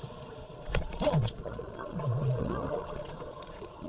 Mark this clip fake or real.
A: fake